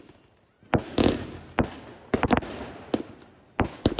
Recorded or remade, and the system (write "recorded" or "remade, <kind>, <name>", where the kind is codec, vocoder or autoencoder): recorded